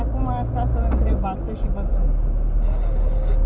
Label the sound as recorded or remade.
recorded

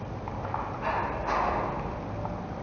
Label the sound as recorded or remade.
recorded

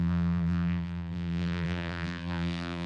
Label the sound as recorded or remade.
remade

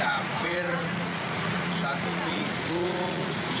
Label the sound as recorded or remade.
remade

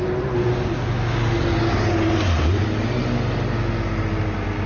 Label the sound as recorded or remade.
recorded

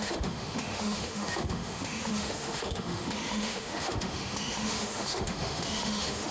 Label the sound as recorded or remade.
remade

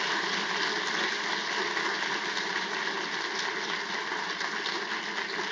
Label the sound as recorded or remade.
recorded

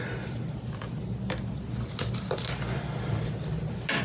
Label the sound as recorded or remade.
recorded